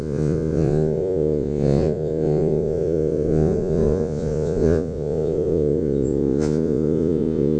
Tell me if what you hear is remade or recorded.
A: remade